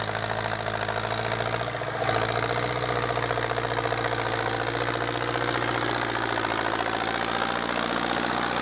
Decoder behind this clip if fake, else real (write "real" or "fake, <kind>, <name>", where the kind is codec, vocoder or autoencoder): real